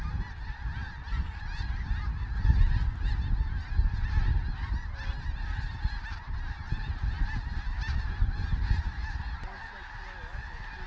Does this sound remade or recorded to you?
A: recorded